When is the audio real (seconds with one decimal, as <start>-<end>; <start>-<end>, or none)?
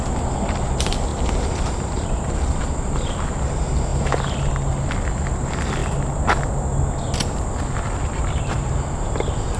0.0-1.1; 2.6-9.6